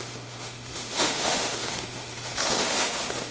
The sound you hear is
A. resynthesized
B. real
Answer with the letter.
A